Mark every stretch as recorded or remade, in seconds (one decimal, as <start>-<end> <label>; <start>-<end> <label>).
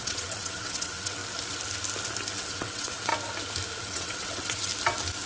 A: 0.0-1.2 remade; 1.2-2.3 recorded; 2.3-3.1 remade; 3.1-3.8 recorded; 3.8-4.7 remade; 4.7-5.3 recorded